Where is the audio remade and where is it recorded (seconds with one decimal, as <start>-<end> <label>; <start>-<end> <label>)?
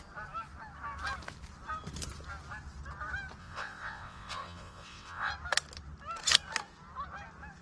0.0-3.4 recorded; 3.4-5.3 remade; 5.3-7.6 recorded